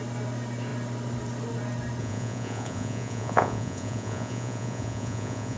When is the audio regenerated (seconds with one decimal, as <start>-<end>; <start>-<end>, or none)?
2.0-5.6